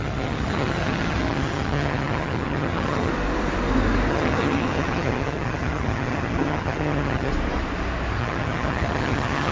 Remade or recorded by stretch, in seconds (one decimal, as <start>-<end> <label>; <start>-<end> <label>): 0.0-3.1 remade; 3.1-4.1 recorded; 4.1-7.3 remade; 7.3-8.2 recorded; 8.2-9.5 remade